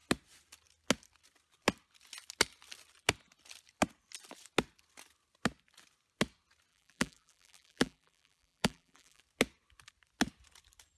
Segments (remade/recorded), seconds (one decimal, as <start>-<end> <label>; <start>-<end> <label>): 0.0-6.7 recorded; 6.7-9.2 remade; 9.2-11.0 recorded